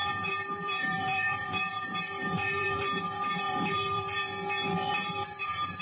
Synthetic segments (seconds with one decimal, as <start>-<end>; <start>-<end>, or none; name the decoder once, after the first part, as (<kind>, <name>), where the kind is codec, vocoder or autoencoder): 0.0-4.2 (vocoder, BigVGAN v2); 4.9-5.8